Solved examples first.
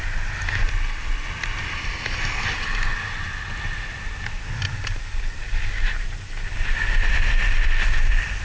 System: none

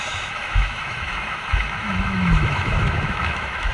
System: autoencoder, DAC-VAE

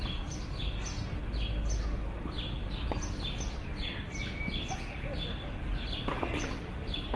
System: none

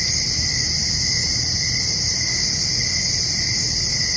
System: none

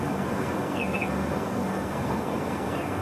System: codec, SNAC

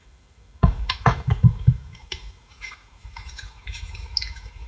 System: autoencoder, DAC-VAE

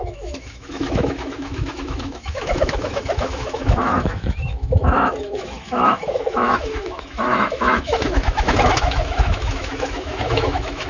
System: autoencoder, DAC-VAE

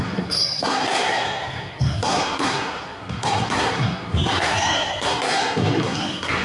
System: codec, SNAC